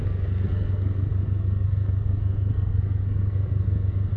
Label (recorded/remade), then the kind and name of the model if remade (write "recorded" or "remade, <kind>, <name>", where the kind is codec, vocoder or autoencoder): remade, codec, SNAC